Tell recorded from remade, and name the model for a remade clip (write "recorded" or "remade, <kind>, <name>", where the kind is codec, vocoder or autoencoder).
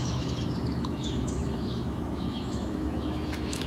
remade, autoencoder, DAC-VAE